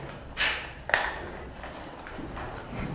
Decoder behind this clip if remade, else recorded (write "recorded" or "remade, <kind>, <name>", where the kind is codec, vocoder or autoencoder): recorded